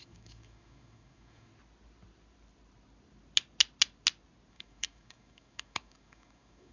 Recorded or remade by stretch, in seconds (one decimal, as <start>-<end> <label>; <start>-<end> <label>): 0.0-1.5 remade; 1.5-4.5 recorded; 4.5-6.7 remade